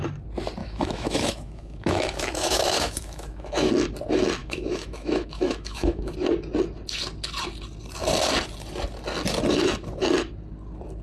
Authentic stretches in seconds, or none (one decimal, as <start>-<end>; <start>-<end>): 0.0-0.6; 3.7-4.4; 6.1-11.0